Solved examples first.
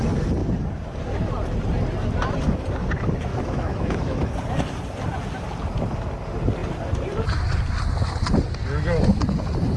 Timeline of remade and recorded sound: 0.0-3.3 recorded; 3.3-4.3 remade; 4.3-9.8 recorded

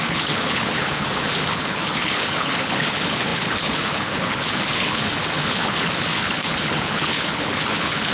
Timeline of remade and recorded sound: 0.0-8.1 remade

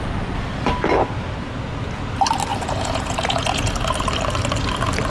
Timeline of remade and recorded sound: 0.0-2.5 recorded; 2.5-3.7 remade; 3.7-5.1 recorded

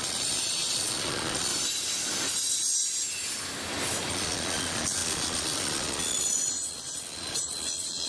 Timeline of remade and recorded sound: 0.0-1.5 remade; 1.5-4.1 recorded; 4.1-8.1 remade

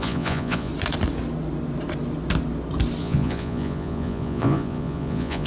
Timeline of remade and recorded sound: 0.0-0.7 remade; 0.7-3.0 recorded; 3.0-5.5 remade